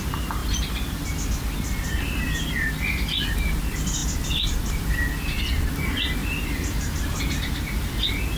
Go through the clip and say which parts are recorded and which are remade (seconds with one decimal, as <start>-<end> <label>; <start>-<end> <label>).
0.0-6.2 recorded; 6.2-7.2 remade; 7.2-8.4 recorded